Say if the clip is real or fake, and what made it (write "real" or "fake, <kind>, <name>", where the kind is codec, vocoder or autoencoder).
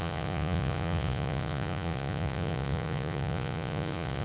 fake, vocoder, Vocos